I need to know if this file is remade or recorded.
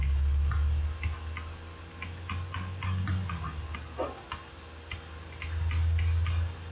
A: recorded